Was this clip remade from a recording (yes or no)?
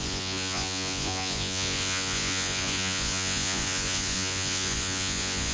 yes